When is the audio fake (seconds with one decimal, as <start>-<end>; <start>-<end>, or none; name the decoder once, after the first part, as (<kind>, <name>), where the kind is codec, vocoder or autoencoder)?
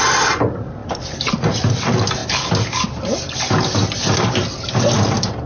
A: none